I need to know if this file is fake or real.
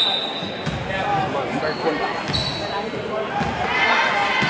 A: real